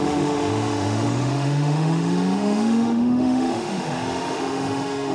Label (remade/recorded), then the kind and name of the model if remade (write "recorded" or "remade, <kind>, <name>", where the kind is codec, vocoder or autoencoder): remade, autoencoder, DAC-VAE